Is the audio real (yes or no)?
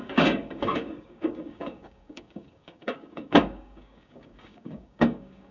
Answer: no